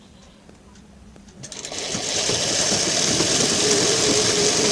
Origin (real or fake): real